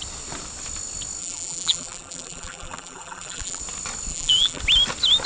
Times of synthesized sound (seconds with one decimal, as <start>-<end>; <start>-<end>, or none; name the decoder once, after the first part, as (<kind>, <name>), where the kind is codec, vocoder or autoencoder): 1.2-3.6 (vocoder, BigVGAN v2); 4.1-4.6